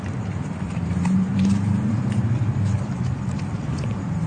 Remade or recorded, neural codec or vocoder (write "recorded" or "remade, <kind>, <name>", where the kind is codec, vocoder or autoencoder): remade, vocoder, BigVGAN v2